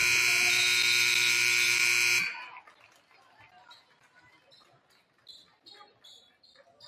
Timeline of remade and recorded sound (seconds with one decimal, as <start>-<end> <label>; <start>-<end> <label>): 0.0-2.8 remade; 2.8-6.9 recorded